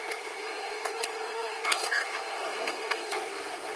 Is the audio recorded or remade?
remade